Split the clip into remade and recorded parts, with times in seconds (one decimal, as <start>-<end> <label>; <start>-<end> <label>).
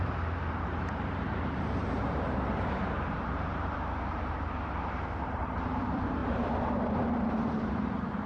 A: 0.0-8.3 remade